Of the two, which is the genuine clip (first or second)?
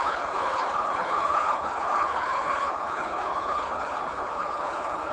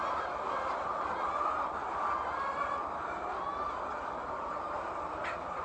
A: second